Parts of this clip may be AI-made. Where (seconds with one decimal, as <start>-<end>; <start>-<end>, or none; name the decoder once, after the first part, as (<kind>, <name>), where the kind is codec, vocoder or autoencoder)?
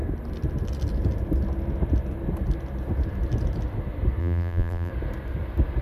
4.2-4.9 (vocoder, BigVGAN v2)